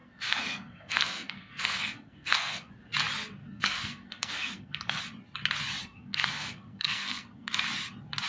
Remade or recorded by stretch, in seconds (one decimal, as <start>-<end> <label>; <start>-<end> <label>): 0.0-2.7 remade; 2.7-3.4 recorded; 3.4-5.0 remade; 5.0-5.8 recorded; 5.8-7.6 remade; 7.6-8.3 recorded